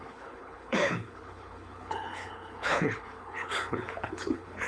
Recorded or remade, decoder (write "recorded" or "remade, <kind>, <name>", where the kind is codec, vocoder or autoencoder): remade, codec, HILCodec